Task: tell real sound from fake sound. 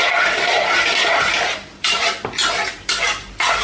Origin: real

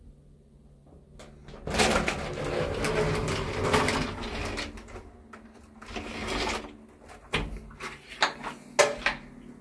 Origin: real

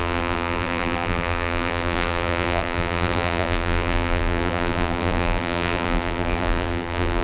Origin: fake